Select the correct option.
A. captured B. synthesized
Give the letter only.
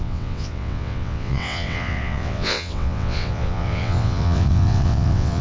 B